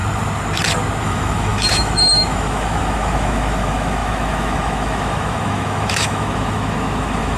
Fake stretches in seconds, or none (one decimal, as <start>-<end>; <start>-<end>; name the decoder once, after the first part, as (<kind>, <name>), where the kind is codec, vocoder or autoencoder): 1.0-7.4 (autoencoder, DAC-VAE)